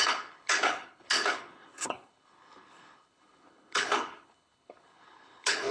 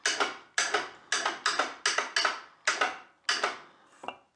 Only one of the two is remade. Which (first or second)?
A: first